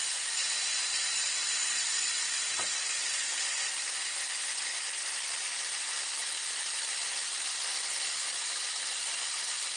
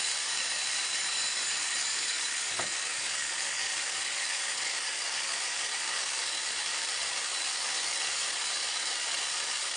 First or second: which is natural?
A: first